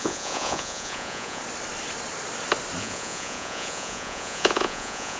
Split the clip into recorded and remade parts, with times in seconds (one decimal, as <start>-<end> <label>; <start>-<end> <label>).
0.0-1.4 remade; 1.4-2.8 recorded; 2.8-5.2 remade